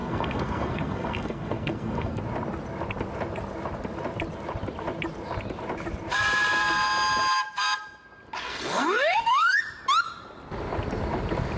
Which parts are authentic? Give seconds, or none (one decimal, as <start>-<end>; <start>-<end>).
2.2-8.4; 9.6-11.6